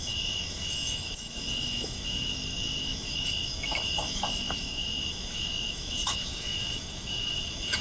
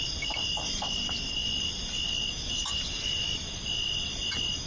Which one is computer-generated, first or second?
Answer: first